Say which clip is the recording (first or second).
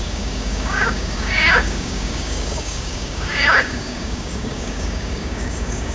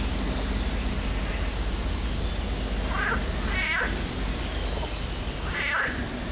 second